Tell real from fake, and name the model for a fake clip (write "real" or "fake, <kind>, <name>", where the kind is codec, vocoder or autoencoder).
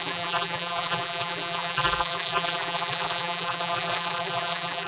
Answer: fake, vocoder, BigVGAN v2